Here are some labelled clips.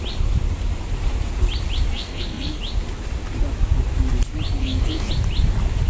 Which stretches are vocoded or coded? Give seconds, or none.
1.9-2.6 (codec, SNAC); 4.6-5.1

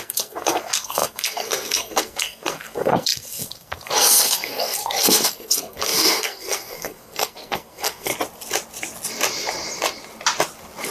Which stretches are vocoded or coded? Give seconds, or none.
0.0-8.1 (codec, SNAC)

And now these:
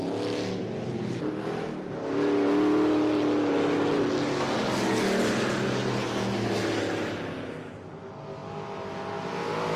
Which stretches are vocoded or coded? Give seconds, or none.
none